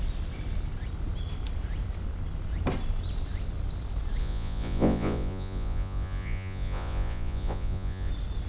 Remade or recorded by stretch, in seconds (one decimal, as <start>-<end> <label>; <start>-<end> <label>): 0.0-4.2 recorded; 4.2-8.1 remade; 8.1-8.5 recorded

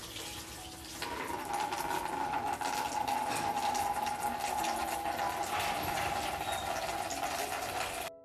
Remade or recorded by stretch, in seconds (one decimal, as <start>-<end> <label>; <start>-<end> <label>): 0.0-8.2 recorded

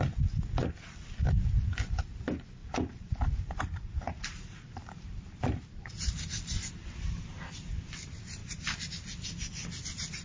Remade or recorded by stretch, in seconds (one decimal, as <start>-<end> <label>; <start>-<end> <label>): 0.0-2.6 recorded; 2.6-6.2 remade; 6.2-8.4 recorded; 8.4-8.9 remade; 8.9-10.2 recorded

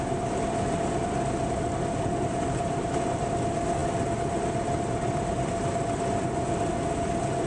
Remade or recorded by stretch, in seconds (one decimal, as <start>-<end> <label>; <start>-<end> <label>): 0.0-7.5 recorded

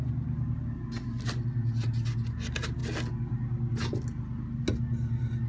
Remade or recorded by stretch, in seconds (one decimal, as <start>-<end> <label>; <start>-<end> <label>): 0.0-5.5 recorded

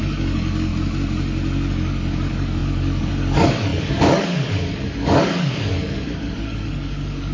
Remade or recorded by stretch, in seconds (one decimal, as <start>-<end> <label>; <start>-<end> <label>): 0.0-0.7 remade; 0.7-1.7 recorded; 1.7-7.3 remade

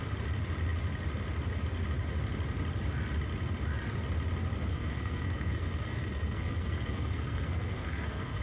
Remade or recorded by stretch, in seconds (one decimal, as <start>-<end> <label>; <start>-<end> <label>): 0.0-4.7 recorded; 4.7-8.4 remade